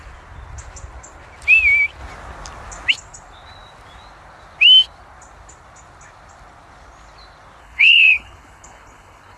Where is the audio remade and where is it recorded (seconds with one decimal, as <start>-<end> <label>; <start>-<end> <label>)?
0.0-7.6 recorded; 7.6-9.4 remade